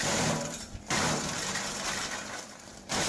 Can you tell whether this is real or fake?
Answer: fake